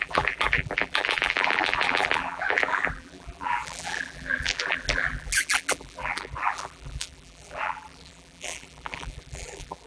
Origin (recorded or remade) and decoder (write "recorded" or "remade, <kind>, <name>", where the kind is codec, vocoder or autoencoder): remade, vocoder, BigVGAN v2